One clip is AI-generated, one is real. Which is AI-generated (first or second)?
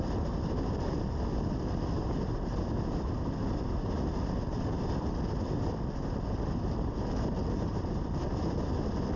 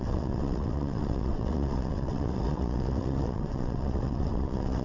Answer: second